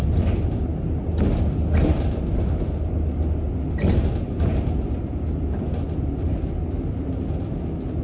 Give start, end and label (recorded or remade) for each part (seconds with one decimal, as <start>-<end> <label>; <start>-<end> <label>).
0.0-8.0 recorded